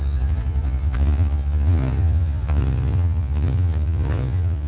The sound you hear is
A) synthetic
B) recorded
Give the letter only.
A